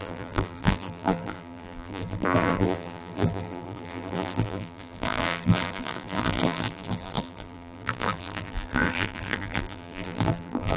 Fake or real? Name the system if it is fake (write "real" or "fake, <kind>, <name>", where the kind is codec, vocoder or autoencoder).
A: fake, vocoder, BigVGAN v2